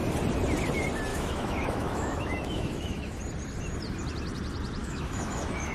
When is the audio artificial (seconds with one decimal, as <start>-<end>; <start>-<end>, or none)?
1.1-3.2; 4.8-5.7